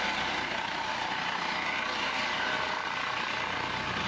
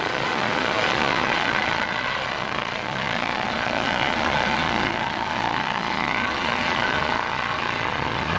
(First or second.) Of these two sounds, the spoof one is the second